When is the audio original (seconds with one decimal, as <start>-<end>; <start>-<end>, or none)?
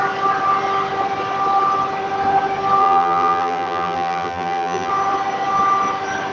0.0-2.8; 4.9-6.3